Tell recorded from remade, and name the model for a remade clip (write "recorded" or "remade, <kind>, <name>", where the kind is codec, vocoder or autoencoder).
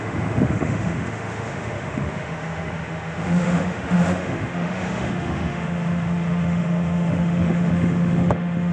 remade, autoencoder, DAC-VAE